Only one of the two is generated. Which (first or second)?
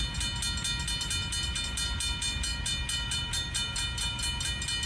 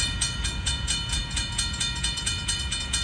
second